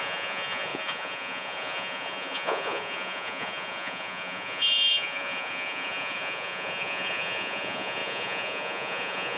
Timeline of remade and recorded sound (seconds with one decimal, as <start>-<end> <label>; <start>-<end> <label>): 0.0-9.4 remade

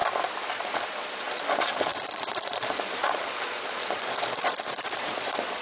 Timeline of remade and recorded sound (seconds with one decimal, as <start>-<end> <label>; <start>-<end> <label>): 0.0-0.5 recorded; 0.5-5.6 remade